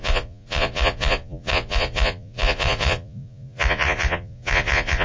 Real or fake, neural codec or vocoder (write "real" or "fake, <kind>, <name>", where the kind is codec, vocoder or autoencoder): fake, vocoder, Vocos